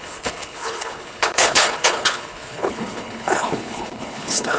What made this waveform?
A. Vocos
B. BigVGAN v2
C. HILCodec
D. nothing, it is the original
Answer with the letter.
C